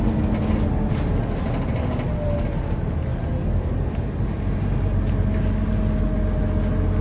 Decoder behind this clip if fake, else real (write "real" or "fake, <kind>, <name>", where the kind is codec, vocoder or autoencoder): real